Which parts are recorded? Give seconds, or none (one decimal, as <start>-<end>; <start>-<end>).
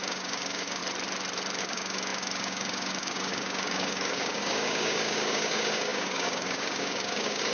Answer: 0.8-1.6